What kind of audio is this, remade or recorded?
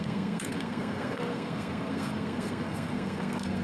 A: remade